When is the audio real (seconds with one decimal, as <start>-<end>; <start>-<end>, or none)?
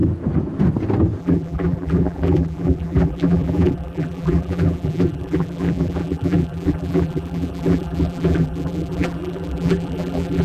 0.0-1.2